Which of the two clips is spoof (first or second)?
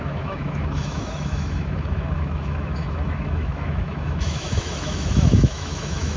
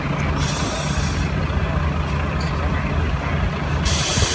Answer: first